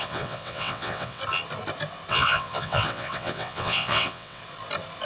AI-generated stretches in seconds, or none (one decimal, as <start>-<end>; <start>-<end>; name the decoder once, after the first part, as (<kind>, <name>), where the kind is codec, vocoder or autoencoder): 0.0-1.2 (vocoder, WaveNeXt); 2.1-4.4